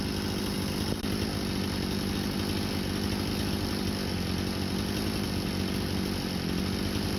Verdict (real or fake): real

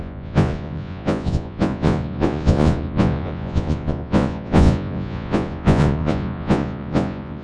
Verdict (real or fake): fake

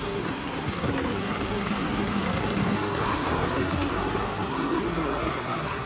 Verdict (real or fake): fake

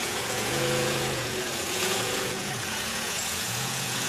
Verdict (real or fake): fake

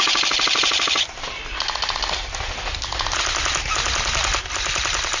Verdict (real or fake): real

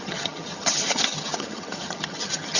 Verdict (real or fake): fake